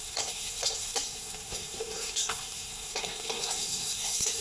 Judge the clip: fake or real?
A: fake